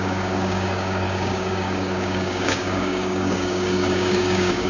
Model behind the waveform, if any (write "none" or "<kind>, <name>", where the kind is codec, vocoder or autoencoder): codec, DAC